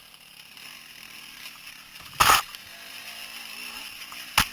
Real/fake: real